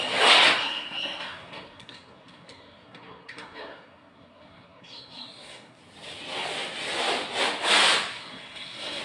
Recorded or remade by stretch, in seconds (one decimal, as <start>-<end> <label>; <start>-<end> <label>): 0.0-0.6 recorded; 0.6-5.8 remade; 5.8-8.2 recorded; 8.2-9.0 remade